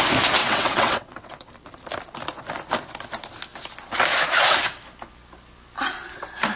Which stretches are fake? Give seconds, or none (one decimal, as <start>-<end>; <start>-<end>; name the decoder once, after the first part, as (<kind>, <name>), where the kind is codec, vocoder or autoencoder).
0.4-1.5 (vocoder, WaveNeXt)